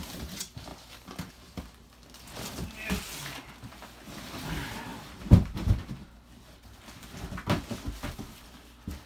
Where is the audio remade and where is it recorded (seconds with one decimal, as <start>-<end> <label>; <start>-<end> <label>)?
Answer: 0.0-4.9 recorded; 4.9-6.1 remade; 6.1-9.1 recorded